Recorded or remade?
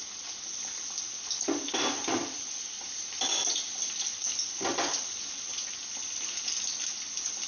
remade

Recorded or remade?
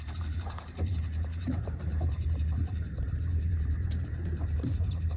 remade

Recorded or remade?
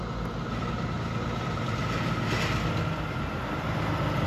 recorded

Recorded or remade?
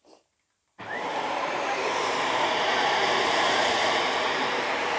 remade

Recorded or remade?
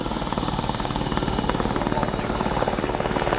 remade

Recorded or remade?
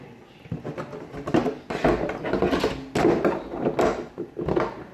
recorded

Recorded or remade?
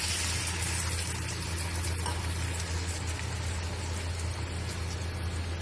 recorded